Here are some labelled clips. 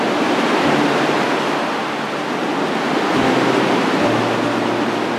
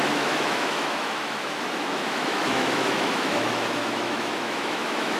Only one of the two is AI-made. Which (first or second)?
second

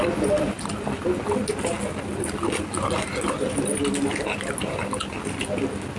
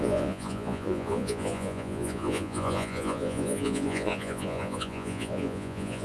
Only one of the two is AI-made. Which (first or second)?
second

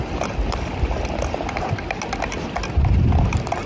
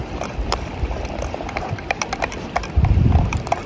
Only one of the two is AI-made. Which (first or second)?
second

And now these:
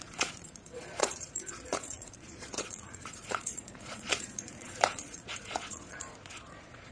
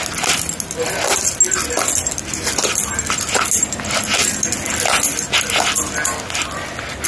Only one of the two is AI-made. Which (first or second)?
first